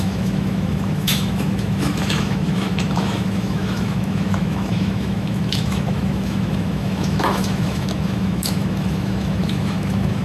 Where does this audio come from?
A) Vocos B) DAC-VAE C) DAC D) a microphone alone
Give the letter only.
B